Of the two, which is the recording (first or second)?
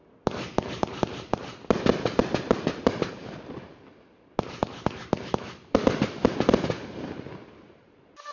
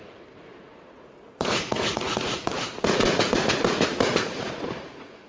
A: first